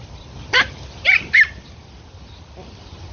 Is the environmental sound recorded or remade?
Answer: remade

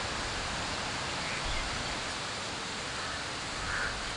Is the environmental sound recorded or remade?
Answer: recorded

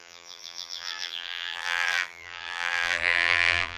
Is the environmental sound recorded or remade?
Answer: remade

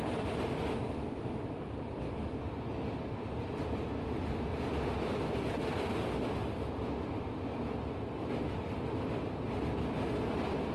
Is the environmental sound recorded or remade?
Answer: recorded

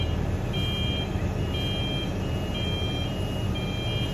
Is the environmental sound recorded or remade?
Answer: recorded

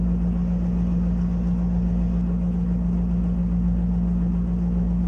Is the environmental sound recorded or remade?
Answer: recorded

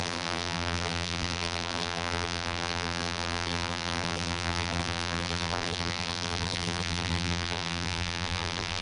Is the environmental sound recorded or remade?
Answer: remade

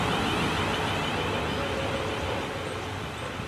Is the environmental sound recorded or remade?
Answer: recorded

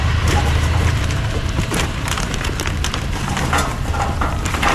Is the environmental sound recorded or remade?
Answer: remade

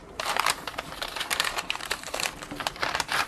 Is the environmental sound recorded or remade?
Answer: remade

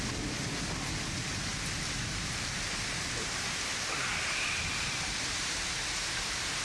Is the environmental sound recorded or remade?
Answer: recorded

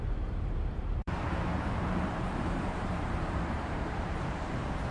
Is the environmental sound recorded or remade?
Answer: remade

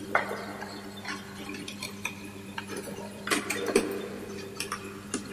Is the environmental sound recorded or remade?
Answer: remade